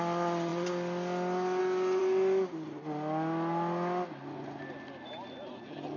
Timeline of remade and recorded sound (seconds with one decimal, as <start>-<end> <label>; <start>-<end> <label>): 0.0-6.0 recorded